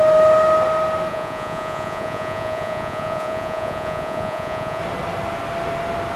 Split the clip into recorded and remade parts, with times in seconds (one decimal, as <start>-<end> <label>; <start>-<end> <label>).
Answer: 0.0-1.1 recorded; 1.1-4.8 remade; 4.8-6.2 recorded